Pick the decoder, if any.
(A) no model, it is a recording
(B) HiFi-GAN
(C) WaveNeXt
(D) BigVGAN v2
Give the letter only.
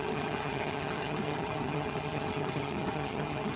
B